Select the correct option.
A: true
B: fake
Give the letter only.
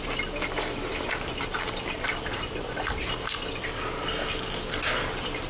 A